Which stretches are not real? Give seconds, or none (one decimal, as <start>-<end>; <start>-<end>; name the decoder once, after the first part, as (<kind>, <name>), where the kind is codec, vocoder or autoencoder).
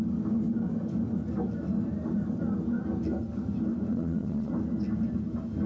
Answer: 3.9-4.5 (vocoder, Vocos)